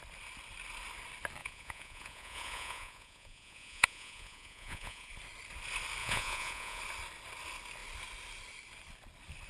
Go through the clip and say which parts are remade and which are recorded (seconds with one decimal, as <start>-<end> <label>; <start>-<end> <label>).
0.0-1.4 recorded; 1.4-5.1 remade; 5.1-6.0 recorded; 6.0-6.8 remade; 6.8-9.5 recorded